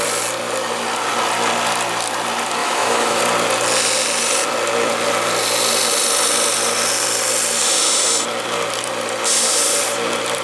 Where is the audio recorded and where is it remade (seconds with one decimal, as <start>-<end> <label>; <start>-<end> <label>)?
0.0-2.6 recorded; 2.6-3.2 remade; 3.2-10.4 recorded